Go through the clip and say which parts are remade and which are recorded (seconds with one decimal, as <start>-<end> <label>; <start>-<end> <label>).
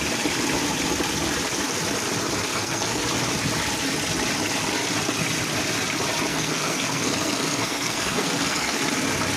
0.0-2.5 recorded; 2.5-3.0 remade; 3.0-6.3 recorded; 6.3-8.8 remade; 8.8-9.4 recorded